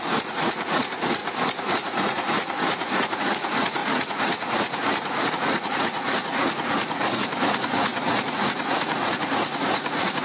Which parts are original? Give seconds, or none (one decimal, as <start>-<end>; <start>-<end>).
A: 1.2-1.7